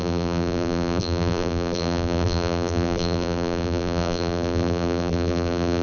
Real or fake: fake